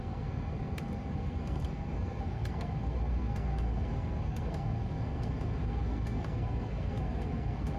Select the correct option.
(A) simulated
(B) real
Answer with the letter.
A